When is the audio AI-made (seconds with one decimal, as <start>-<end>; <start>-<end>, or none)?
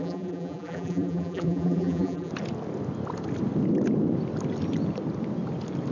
0.0-2.3